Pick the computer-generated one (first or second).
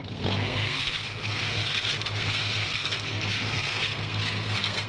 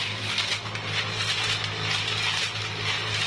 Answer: first